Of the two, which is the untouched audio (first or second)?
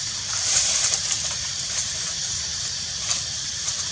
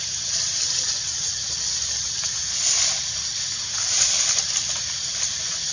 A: second